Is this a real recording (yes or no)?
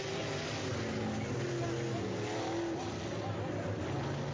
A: yes